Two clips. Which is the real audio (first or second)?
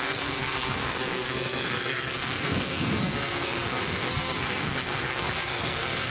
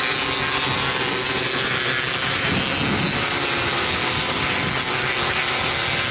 second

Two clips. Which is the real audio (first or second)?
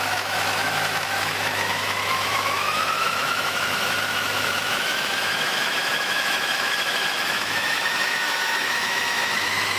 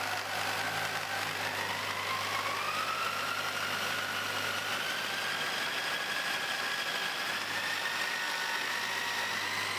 second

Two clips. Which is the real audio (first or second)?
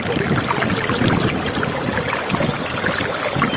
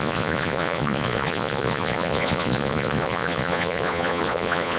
first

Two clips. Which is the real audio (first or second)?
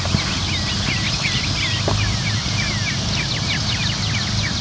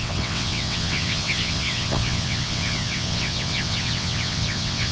first